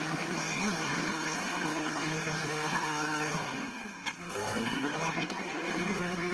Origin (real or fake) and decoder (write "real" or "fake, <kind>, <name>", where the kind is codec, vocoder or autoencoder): fake, codec, SNAC